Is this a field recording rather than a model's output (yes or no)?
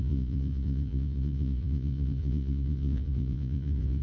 no